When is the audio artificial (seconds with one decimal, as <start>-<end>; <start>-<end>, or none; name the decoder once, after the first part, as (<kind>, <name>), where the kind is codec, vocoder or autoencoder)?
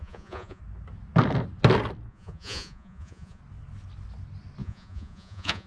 0.0-0.6 (vocoder, Vocos); 2.1-3.4; 4.6-5.7